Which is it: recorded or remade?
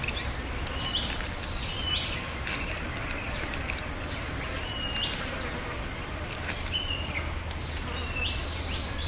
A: recorded